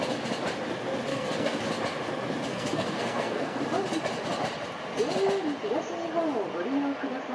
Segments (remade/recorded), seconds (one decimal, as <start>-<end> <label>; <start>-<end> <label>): 0.0-1.1 recorded; 1.1-1.6 remade; 1.6-2.5 recorded; 2.5-3.6 remade; 3.6-7.3 recorded